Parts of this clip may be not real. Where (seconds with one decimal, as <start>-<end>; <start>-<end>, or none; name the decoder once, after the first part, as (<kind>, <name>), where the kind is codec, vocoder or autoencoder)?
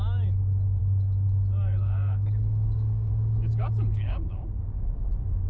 0.8-3.1 (codec, DAC); 3.5-4.6